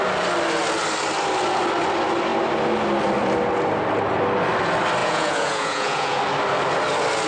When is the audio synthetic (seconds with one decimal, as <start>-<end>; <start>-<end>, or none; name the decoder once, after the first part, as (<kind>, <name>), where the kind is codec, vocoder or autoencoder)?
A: 5.0-6.2 (vocoder, Vocos)